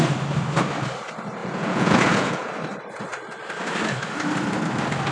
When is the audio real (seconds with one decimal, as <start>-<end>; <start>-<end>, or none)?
0.0-1.4; 2.5-5.1

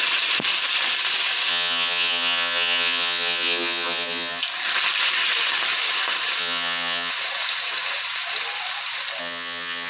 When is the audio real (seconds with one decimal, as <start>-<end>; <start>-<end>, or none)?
0.0-1.5; 4.4-6.4; 7.1-9.2

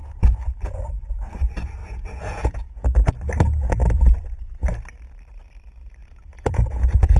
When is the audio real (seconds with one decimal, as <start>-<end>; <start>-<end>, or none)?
0.0-1.8; 3.1-6.0